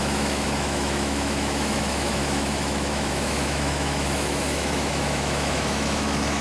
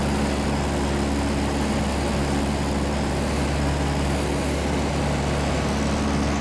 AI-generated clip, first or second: first